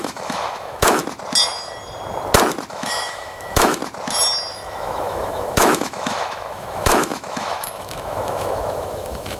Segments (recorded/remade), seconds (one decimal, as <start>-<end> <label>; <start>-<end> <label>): 0.0-1.0 remade; 1.0-2.7 recorded; 2.7-3.8 remade; 3.8-4.5 recorded; 4.5-9.4 remade